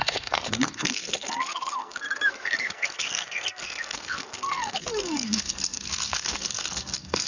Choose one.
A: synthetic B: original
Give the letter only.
A